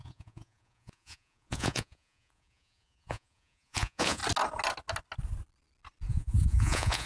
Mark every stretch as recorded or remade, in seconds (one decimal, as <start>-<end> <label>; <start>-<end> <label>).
0.0-4.2 remade; 4.2-6.1 recorded; 6.1-7.1 remade